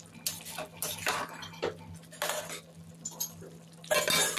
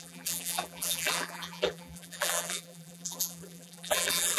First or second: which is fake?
second